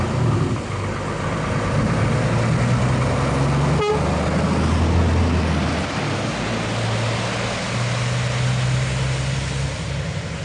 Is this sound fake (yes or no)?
no